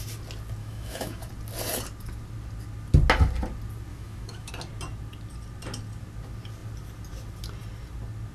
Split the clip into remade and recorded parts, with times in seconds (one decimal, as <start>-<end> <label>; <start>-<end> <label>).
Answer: 0.0-0.6 recorded; 0.6-1.3 remade; 1.3-3.9 recorded; 3.9-4.5 remade; 4.5-8.3 recorded